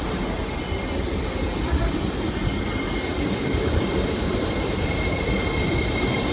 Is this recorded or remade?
remade